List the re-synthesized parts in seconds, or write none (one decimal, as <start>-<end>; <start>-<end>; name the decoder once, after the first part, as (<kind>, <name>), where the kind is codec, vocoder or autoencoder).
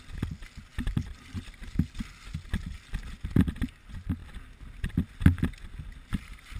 6.1-6.6 (vocoder, BigVGAN v2)